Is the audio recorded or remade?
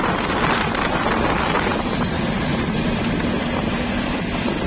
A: recorded